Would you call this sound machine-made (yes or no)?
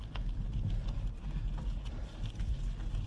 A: no